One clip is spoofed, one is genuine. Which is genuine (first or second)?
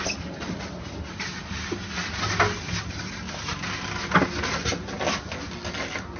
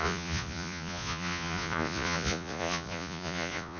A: first